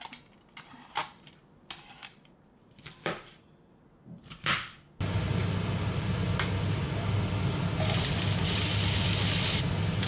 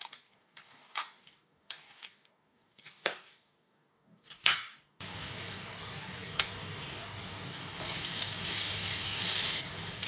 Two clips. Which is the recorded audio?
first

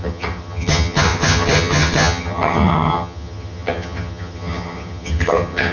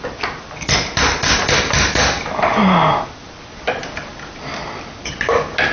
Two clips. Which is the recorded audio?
second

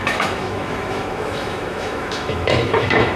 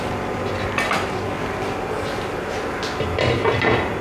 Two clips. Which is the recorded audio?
second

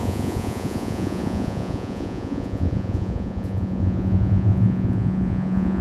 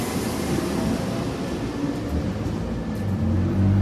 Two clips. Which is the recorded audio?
second